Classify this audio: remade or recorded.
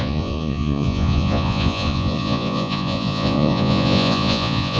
remade